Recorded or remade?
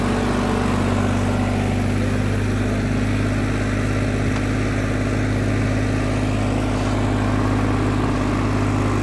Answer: recorded